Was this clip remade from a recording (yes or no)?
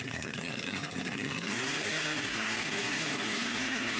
yes